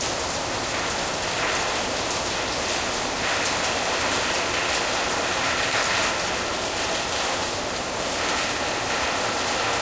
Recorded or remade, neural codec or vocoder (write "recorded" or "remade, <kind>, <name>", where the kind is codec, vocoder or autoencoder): recorded